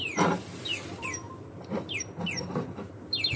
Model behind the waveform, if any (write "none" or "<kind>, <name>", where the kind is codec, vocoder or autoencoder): vocoder, BigVGAN v2